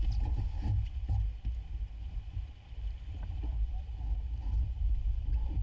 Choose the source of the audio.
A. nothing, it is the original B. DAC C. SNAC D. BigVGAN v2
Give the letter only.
A